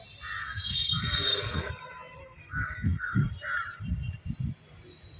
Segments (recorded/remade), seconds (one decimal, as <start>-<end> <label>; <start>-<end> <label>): 0.0-0.4 recorded; 0.4-1.7 remade; 1.7-2.2 recorded; 2.2-3.3 remade; 3.3-5.2 recorded